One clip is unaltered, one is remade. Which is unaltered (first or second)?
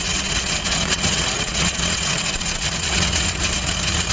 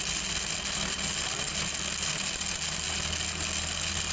second